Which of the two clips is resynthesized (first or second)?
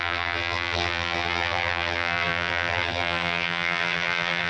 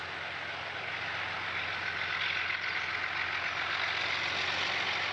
first